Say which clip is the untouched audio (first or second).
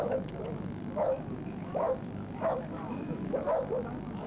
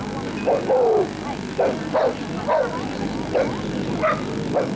second